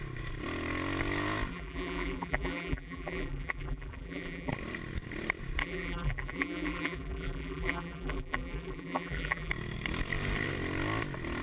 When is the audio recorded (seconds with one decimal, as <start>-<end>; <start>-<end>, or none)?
0.0-1.5; 4.5-5.6; 9.5-11.4